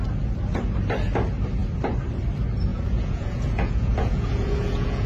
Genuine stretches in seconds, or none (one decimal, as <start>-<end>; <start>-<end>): 0.0-2.7